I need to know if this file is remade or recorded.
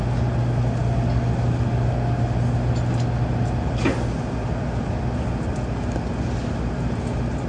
recorded